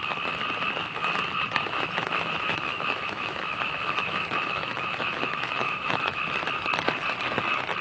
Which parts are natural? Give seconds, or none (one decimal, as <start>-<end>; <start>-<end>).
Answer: 0.0-1.6; 6.3-7.8